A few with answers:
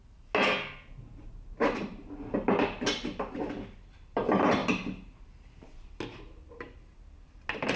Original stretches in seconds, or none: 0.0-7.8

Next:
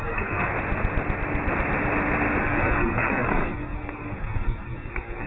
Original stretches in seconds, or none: 0.5-2.4

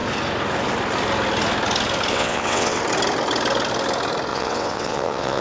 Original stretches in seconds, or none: 0.0-2.1; 2.8-4.3

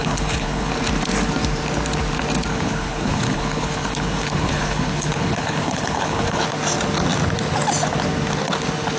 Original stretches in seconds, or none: 0.7-2.5; 6.4-9.0

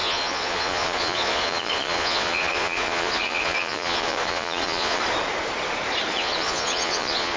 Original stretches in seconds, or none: 5.0-6.1